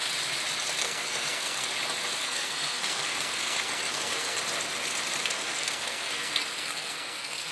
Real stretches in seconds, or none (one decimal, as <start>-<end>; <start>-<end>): 0.0-0.8; 1.7-2.2; 4.4-5.2